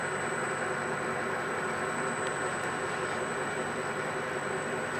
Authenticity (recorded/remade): remade